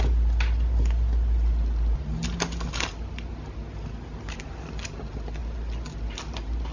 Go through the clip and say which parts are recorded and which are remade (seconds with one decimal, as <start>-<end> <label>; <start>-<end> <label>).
0.0-6.7 recorded

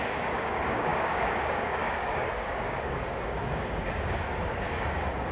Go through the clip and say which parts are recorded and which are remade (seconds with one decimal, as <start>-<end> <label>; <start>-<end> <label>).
0.0-5.3 remade

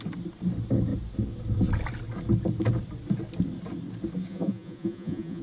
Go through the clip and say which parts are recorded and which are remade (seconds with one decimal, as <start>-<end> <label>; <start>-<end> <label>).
0.0-4.3 recorded; 4.3-5.4 remade

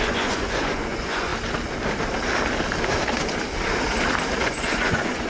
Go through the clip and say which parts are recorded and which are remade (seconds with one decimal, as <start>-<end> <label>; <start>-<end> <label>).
0.0-1.3 remade; 1.3-4.4 recorded; 4.4-5.3 remade